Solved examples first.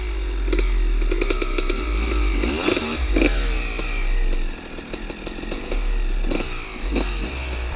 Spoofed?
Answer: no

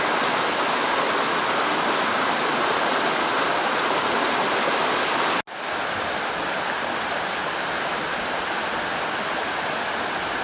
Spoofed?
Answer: no